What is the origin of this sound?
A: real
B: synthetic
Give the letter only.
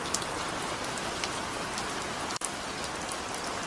A